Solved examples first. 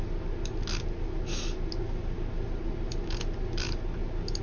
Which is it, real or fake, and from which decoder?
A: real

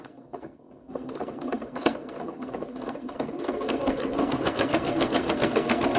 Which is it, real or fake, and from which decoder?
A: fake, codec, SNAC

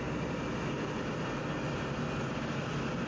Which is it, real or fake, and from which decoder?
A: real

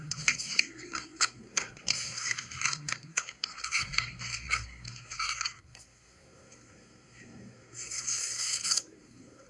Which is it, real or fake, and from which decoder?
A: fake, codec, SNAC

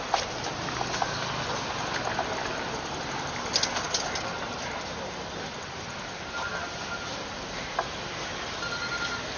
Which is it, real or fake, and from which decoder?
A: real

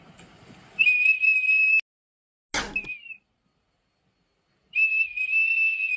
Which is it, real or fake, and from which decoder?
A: real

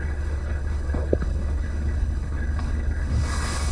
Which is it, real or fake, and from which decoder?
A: fake, codec, HILCodec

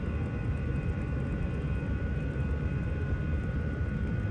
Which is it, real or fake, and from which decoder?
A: fake, vocoder, BigVGAN v2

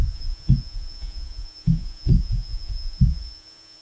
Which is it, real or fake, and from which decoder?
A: fake, vocoder, Vocos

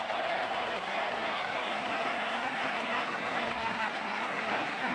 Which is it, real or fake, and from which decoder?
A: fake, codec, SNAC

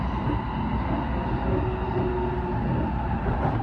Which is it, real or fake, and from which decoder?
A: real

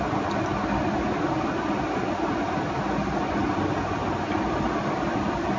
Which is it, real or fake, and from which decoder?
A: real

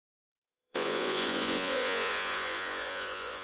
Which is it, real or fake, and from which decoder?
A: fake, vocoder, Vocos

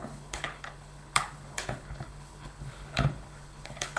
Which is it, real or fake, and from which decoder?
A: fake, codec, HILCodec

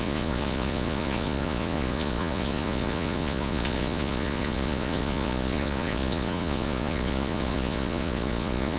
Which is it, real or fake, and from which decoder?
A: fake, vocoder, Vocos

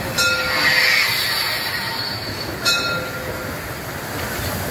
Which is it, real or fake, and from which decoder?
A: real